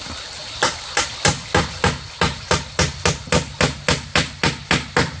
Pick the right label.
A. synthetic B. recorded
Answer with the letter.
B